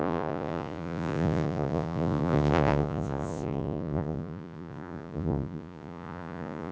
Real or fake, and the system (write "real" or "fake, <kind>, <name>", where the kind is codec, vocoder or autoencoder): fake, vocoder, Vocos